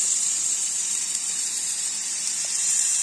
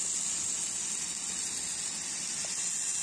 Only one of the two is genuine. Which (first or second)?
second